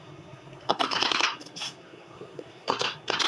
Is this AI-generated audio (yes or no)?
yes